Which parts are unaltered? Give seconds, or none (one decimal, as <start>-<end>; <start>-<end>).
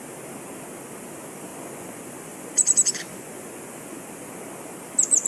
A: 0.0-1.5; 4.4-5.3